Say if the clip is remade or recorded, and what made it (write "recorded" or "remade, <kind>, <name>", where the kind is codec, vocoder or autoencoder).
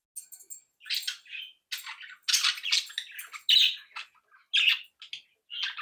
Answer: recorded